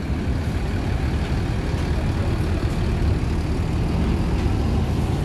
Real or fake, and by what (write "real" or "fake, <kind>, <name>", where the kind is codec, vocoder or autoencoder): real